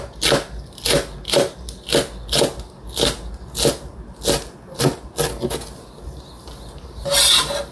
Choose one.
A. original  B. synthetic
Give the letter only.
A